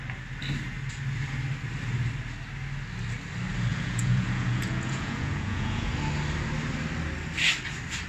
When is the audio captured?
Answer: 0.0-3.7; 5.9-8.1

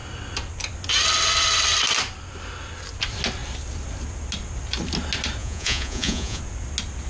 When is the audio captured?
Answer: 0.0-5.4; 6.4-7.1